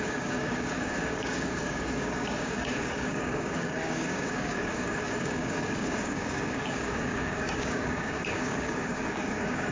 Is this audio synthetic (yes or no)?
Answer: yes